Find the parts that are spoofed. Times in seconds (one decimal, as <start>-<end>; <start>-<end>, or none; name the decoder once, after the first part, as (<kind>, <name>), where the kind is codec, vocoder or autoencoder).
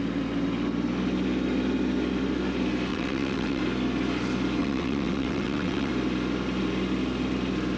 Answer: 2.9-3.6 (vocoder, WaveNeXt); 4.6-5.9